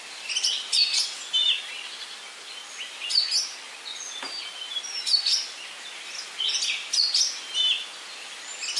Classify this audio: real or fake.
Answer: real